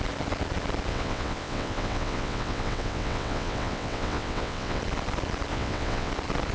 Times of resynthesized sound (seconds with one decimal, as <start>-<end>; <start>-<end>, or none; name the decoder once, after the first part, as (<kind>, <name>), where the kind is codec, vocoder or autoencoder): 0.9-4.8 (vocoder, WaveNeXt); 5.5-6.1